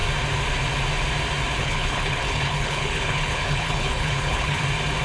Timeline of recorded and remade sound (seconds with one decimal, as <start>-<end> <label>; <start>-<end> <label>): 0.0-1.6 recorded; 1.6-4.6 remade; 4.6-5.0 recorded